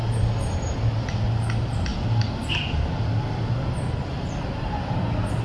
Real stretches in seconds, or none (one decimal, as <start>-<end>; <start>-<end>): 0.0-5.4